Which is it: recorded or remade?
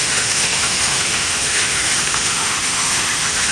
remade